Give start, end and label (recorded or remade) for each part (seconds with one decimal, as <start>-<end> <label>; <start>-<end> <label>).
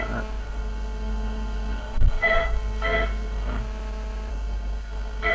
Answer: 0.0-0.4 recorded; 0.4-3.6 remade; 3.6-4.3 recorded; 4.3-5.3 remade